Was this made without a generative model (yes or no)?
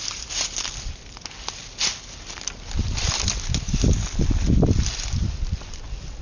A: yes